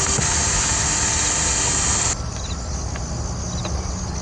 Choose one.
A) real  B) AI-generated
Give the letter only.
A